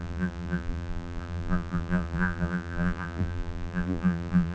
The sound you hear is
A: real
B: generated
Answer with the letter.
B